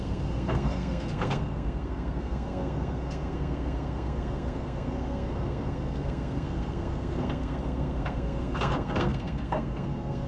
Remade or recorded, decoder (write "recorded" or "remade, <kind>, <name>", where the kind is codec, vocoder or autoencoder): remade, codec, SNAC